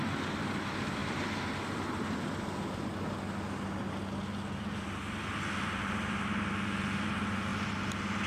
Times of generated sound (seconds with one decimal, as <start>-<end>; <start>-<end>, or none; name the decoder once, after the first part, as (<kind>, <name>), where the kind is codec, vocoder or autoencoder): none